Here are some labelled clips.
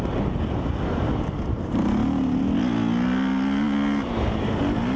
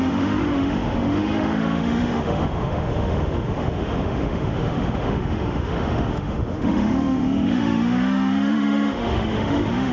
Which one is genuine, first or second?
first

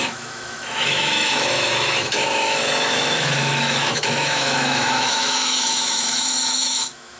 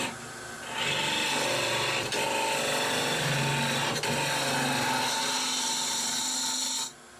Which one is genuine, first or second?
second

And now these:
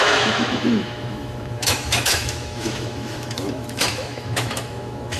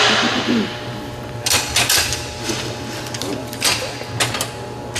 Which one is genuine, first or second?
second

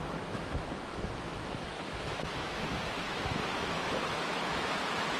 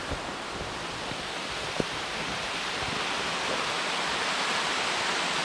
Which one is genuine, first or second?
second